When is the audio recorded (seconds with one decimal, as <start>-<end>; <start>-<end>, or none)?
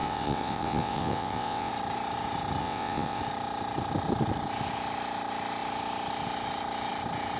1.7-2.6; 3.2-7.4